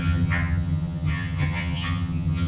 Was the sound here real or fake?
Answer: fake